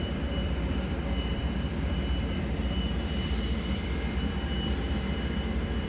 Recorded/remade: remade